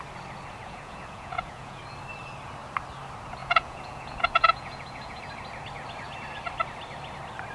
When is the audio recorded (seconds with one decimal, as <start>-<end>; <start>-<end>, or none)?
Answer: 0.0-0.6; 1.8-3.4; 5.2-7.5